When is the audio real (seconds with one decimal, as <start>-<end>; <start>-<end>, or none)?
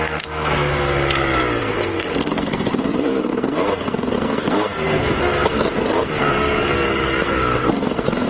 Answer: 0.7-1.6